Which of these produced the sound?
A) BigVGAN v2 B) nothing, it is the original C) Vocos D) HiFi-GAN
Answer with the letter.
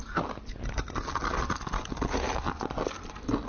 B